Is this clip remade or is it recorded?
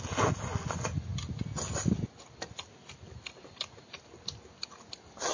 recorded